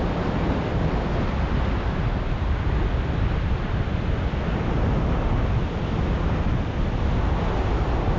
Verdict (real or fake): real